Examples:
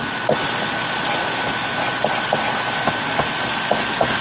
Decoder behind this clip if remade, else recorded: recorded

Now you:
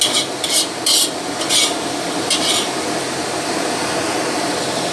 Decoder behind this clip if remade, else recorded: recorded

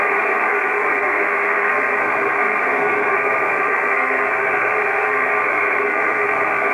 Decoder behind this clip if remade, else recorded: remade, codec, SNAC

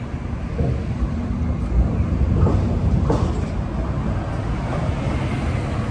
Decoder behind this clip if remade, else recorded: recorded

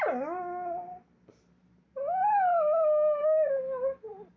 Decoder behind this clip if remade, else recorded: recorded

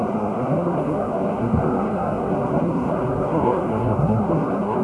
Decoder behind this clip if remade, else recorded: remade, codec, SNAC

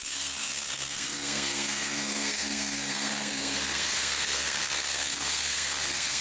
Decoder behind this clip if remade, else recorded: remade, codec, SNAC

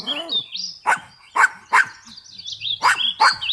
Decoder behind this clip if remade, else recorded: recorded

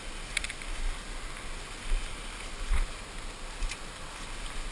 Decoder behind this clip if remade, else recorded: recorded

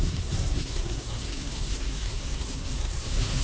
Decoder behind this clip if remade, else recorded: remade, codec, SNAC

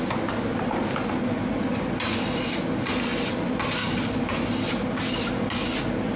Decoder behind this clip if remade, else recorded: recorded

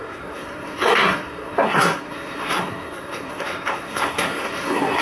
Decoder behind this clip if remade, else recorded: remade, codec, SNAC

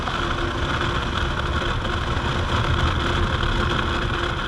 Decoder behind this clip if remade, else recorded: recorded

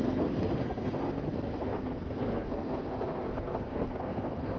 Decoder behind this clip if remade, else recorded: remade, codec, SNAC